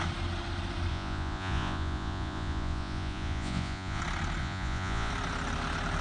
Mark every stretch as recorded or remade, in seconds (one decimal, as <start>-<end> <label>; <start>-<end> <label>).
0.0-0.9 recorded; 0.9-4.0 remade; 4.0-4.4 recorded; 4.4-5.1 remade; 5.1-6.0 recorded